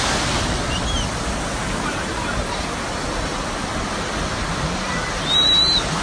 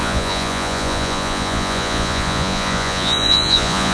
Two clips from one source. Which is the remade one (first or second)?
second